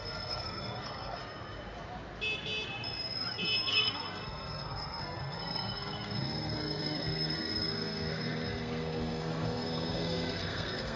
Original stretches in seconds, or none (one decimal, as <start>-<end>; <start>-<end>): 1.2-3.7